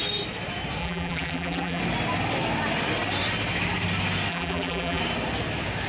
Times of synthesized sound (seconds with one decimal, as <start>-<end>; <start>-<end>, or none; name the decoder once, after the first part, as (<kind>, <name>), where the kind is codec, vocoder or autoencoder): 0.8-1.8 (vocoder, BigVGAN v2); 4.3-5.0